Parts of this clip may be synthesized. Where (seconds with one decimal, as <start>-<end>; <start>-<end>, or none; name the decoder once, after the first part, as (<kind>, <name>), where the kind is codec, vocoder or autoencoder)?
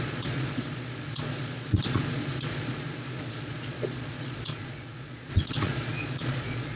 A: 0.0-6.8 (vocoder, Vocos)